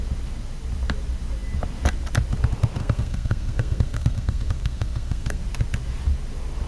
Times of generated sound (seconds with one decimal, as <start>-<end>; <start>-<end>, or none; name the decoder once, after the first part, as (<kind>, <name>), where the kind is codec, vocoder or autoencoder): 2.8-5.4 (codec, SNAC)